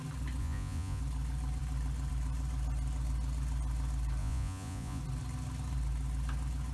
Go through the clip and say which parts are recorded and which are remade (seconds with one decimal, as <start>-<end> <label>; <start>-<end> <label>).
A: 0.0-0.4 recorded; 0.4-1.0 remade; 1.0-4.2 recorded; 4.2-5.0 remade; 5.0-6.7 recorded